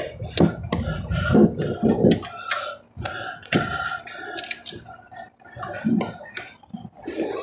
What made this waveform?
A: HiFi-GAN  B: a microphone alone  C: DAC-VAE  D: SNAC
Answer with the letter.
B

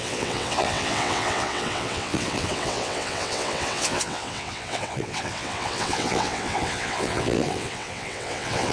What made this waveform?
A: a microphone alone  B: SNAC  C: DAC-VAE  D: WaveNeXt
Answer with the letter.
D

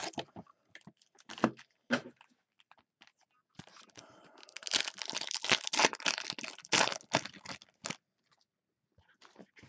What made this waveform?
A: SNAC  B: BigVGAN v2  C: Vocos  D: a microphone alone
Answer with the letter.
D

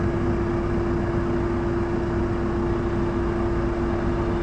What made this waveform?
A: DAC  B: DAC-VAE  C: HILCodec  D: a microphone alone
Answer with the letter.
D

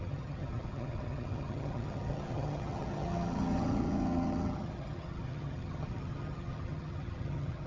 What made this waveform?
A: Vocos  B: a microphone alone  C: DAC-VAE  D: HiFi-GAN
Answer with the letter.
D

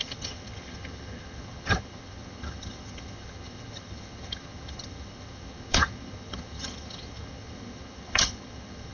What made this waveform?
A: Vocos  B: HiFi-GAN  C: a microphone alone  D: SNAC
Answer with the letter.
B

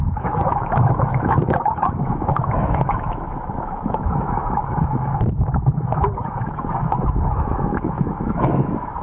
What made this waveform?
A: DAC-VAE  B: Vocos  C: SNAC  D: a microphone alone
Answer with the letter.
A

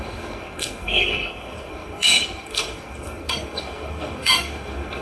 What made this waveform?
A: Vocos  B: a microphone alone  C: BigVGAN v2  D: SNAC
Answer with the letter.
D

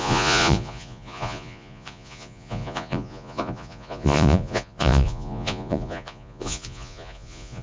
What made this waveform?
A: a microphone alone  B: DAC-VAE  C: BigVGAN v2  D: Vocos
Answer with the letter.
D